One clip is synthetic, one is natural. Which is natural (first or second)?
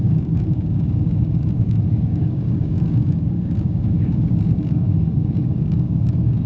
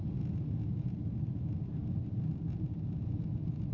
second